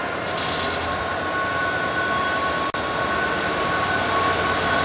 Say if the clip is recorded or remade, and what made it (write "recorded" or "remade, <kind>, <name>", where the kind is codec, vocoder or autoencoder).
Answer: recorded